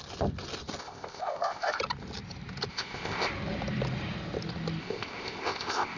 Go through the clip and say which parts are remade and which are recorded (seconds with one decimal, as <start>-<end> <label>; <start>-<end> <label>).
0.0-0.8 recorded; 0.8-1.8 remade; 1.8-2.7 recorded; 2.7-3.3 remade; 3.3-4.8 recorded; 4.8-6.0 remade